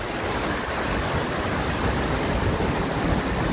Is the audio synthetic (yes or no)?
no